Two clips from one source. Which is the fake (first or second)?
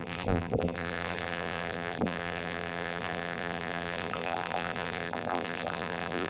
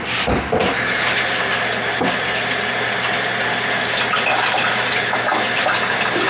first